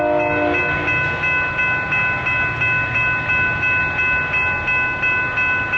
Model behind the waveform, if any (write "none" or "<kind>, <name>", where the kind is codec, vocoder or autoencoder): none